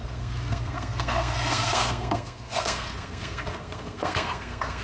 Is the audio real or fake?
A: fake